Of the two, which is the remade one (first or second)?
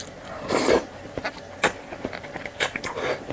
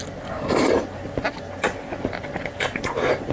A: first